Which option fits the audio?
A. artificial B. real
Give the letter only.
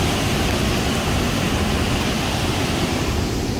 B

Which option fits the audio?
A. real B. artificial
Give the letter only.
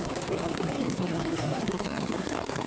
B